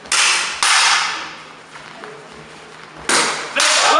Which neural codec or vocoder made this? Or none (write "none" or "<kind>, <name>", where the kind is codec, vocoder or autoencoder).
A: none